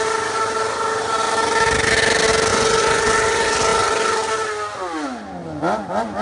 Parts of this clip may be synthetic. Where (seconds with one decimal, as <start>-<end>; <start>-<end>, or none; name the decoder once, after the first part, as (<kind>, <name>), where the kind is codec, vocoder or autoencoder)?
2.5-3.1 (vocoder, Vocos)